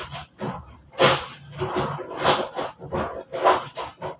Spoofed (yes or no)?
no